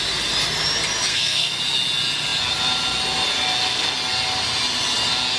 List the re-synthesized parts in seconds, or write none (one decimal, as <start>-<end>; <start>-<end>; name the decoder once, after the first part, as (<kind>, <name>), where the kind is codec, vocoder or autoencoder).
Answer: 1.1-1.6 (codec, SNAC)